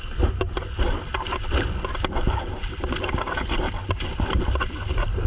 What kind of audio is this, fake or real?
real